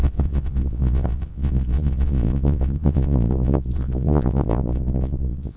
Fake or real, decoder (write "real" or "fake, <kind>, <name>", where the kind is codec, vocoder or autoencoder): fake, vocoder, Vocos